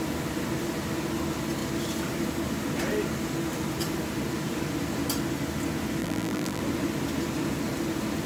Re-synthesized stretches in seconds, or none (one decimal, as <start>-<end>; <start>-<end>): 6.0-6.6

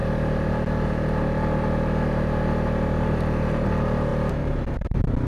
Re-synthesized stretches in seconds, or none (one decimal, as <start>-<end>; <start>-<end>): none

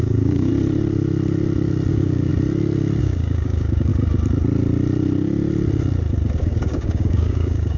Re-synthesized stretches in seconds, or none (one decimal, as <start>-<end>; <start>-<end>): 0.0-0.5; 1.9-2.3; 3.0-3.9; 6.4-7.8

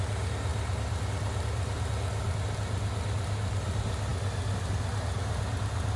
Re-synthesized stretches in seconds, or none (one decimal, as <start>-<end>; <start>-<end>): none

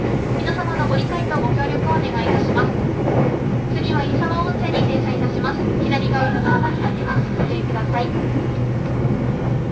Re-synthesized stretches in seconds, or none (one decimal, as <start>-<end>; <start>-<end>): 6.2-7.5